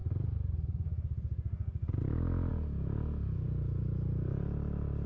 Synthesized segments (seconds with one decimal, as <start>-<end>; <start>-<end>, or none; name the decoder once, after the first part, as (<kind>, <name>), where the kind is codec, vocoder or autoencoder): none